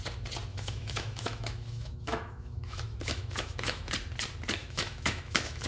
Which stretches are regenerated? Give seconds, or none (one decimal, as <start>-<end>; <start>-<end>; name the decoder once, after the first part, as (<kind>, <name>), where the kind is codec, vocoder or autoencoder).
0.5-3.9 (autoencoder, DAC-VAE); 4.6-5.7